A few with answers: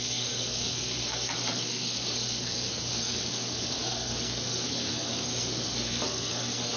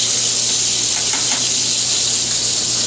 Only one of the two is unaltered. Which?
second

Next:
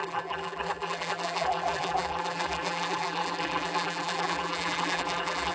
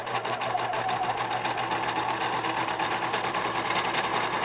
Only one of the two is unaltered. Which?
second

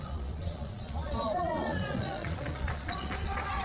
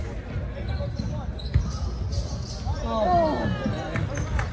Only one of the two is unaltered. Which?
second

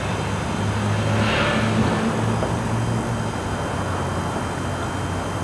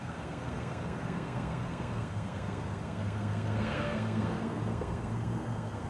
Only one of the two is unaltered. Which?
first